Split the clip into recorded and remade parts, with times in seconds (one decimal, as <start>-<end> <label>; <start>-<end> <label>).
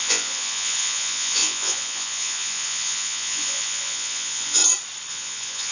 0.0-4.6 remade; 4.6-5.1 recorded; 5.1-5.7 remade